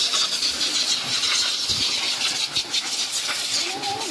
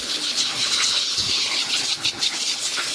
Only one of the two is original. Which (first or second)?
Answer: first